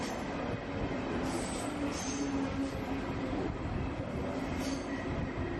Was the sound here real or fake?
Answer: real